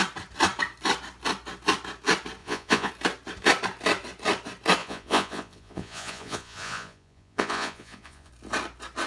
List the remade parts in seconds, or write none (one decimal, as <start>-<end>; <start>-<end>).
2.4-2.9; 4.8-8.3